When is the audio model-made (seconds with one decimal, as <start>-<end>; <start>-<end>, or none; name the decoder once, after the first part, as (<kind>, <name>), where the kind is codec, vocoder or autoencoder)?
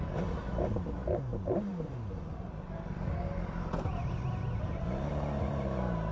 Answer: 1.3-1.9 (vocoder, BigVGAN v2)